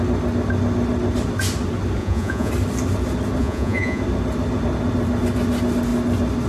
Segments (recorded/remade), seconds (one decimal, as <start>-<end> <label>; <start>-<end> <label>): 0.0-2.0 recorded; 2.0-2.5 remade; 2.5-3.4 recorded; 3.4-4.0 remade; 4.0-6.5 recorded